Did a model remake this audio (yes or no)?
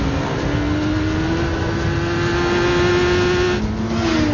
no